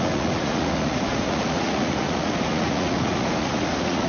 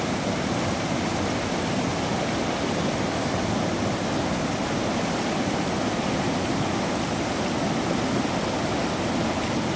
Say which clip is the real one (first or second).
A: second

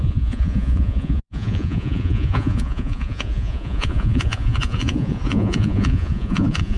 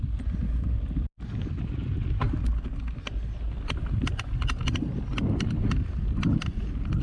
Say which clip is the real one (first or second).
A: second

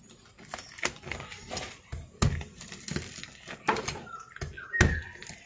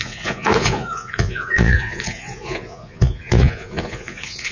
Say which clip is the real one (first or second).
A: first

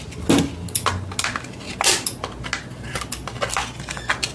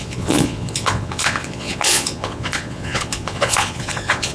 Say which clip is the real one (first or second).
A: first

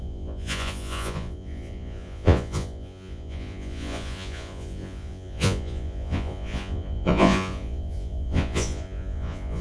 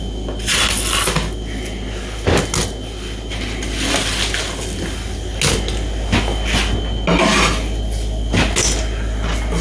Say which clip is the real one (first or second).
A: second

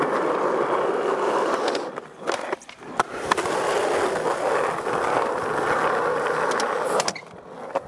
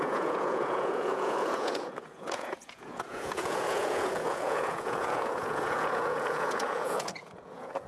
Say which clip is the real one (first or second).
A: first